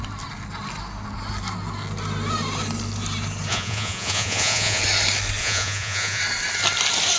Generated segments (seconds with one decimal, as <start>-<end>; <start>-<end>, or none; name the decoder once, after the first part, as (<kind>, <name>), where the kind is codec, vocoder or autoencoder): 3.5-4.8 (vocoder, Vocos); 5.4-6.2